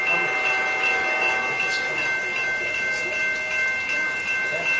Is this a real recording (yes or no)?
yes